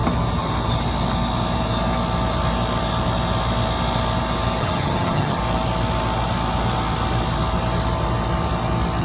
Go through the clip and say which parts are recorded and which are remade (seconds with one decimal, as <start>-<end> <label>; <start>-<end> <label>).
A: 0.0-4.6 recorded; 4.6-5.4 remade; 5.4-9.0 recorded